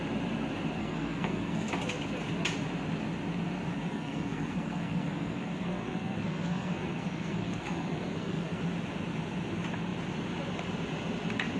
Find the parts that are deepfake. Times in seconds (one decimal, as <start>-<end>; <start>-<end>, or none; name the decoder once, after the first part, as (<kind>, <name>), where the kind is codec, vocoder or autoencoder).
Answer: 0.8-1.7 (codec, SNAC); 3.7-8.6

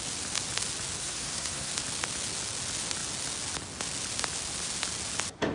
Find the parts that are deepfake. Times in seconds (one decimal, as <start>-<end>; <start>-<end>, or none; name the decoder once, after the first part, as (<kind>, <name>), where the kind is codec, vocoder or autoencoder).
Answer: 1.0-1.7 (codec, SNAC)

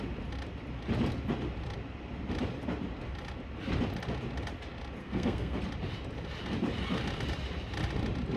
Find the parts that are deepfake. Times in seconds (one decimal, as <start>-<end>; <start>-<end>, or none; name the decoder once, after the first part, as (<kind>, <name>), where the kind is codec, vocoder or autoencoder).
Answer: 5.0-5.6 (codec, SNAC)

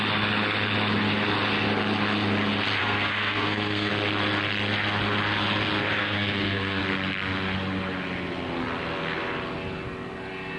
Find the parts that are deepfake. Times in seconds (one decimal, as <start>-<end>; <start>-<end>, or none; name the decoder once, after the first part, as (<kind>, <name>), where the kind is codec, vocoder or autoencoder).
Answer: 2.8-3.9 (codec, SNAC); 6.0-6.8

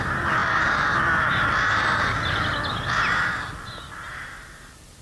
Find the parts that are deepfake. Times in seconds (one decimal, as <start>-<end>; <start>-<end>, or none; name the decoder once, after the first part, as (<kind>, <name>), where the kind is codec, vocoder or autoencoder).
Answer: none

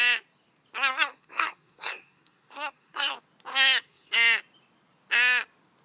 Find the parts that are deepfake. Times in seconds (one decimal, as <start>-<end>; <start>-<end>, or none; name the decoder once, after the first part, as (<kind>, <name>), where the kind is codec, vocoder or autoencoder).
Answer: 0.9-3.1 (codec, SNAC); 3.5-4.1

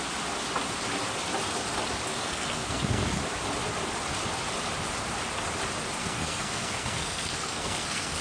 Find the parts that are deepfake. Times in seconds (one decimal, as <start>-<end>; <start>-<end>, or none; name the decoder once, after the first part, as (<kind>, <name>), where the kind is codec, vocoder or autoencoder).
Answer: 2.1-3.2 (codec, SNAC); 6.0-8.2